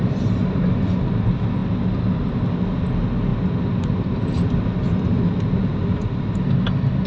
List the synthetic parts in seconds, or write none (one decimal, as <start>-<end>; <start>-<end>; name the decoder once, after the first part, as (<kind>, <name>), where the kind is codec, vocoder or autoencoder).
none